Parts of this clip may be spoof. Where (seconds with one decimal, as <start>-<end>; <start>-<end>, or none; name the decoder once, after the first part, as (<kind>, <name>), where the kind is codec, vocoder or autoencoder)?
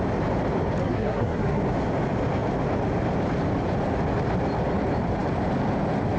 0.8-1.6 (codec, SNAC)